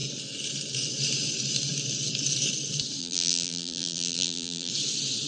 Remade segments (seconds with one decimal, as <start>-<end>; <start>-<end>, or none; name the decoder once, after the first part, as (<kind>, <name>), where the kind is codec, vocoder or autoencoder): 3.0-4.7 (vocoder, BigVGAN v2)